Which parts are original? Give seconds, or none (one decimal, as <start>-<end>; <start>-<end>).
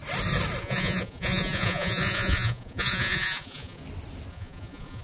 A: 0.0-0.6; 3.8-4.3